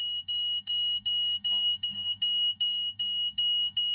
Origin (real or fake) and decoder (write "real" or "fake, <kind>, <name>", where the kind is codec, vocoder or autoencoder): fake, autoencoder, DAC-VAE